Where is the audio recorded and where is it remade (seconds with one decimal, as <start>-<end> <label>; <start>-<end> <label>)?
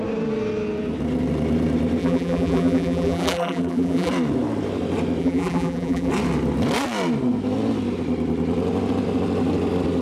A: 0.0-2.0 recorded; 2.0-4.1 remade; 4.1-5.2 recorded; 5.2-6.1 remade; 6.1-10.0 recorded